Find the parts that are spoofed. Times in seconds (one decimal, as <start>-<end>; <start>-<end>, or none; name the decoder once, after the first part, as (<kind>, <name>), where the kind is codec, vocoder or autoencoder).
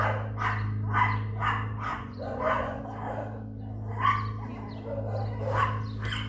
1.9-2.8 (vocoder, Vocos)